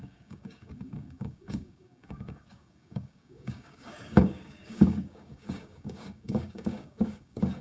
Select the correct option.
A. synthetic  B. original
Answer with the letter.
A